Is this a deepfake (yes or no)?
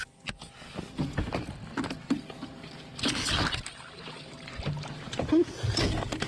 no